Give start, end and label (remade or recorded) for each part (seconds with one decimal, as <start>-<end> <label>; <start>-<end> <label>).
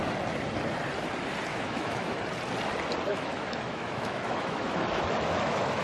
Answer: 0.0-1.5 recorded; 1.5-2.2 remade; 2.2-3.1 recorded; 3.1-5.8 remade